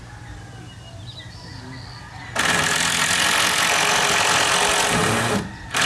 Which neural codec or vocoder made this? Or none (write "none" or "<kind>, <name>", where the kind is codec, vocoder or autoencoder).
none